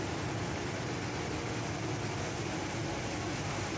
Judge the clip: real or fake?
real